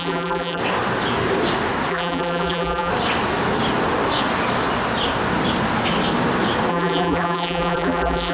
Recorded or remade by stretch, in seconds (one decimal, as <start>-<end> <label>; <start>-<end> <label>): 0.0-0.6 remade; 0.6-1.9 recorded; 1.9-2.9 remade; 2.9-6.7 recorded; 6.7-8.3 remade